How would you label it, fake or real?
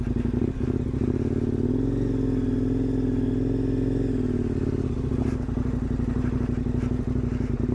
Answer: real